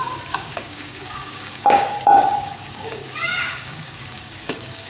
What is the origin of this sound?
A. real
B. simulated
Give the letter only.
B